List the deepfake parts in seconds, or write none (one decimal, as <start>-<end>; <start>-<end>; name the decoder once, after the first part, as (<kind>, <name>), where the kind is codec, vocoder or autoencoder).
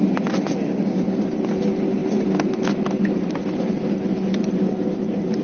none